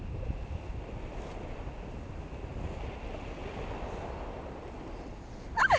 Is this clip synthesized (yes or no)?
no